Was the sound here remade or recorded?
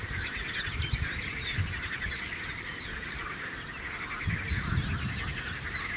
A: recorded